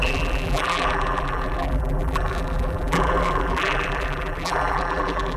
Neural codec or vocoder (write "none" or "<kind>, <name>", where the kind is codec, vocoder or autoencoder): vocoder, BigVGAN v2